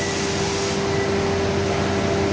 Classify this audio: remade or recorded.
recorded